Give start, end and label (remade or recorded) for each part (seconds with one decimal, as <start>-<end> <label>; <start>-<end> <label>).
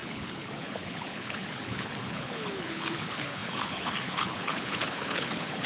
0.0-5.7 remade